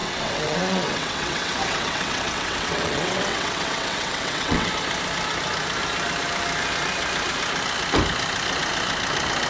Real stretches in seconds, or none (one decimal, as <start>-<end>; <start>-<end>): 4.7-9.5